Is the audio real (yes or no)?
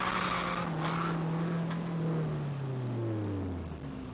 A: yes